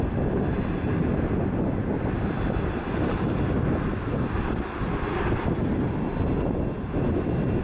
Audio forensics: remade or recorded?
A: recorded